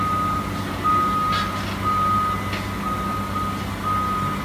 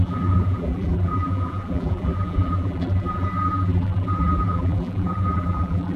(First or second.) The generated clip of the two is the second